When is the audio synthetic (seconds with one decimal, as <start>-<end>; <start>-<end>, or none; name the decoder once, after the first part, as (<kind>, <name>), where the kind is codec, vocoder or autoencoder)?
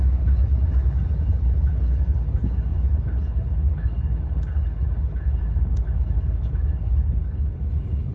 0.0-0.5 (codec, HILCodec); 1.4-8.1